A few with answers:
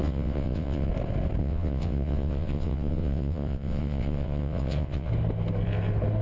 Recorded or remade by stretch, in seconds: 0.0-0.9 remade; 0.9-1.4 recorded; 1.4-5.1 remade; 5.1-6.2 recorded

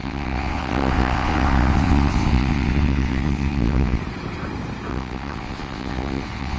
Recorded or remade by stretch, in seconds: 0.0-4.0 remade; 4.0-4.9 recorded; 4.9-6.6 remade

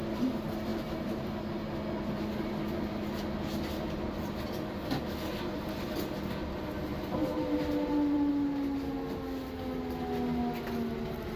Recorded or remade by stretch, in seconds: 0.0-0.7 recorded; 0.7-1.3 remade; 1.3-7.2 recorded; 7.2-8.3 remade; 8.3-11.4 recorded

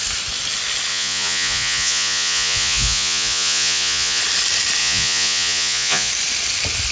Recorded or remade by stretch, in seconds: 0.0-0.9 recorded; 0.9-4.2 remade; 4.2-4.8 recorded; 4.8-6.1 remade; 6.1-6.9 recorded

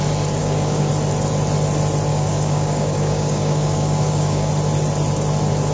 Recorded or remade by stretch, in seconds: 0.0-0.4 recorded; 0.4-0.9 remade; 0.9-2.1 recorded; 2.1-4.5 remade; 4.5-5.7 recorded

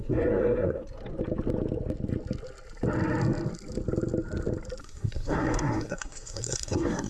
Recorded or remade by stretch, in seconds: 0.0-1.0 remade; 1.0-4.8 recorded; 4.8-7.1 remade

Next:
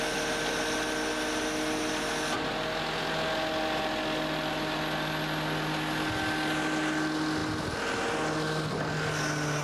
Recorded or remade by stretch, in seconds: 0.0-9.6 recorded